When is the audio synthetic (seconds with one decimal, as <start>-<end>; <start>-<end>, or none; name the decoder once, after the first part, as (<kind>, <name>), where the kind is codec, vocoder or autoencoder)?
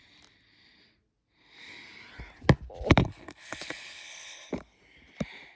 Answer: 3.0-4.5 (codec, HILCodec)